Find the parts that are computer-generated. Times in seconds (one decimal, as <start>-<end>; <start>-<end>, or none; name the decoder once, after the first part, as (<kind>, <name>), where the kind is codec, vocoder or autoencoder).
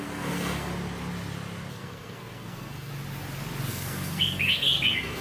0.0-0.7 (codec, SNAC); 1.7-2.9; 3.7-5.2